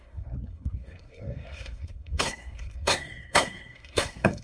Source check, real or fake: fake